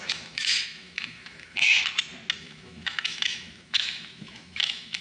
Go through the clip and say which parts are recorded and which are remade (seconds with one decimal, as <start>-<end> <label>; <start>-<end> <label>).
0.0-1.7 remade; 1.7-2.4 recorded; 2.4-5.0 remade